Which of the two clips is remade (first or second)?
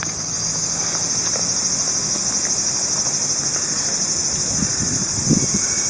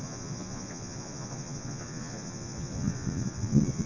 second